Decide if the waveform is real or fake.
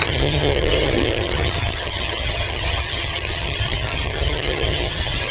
fake